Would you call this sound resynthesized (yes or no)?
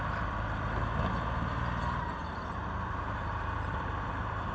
yes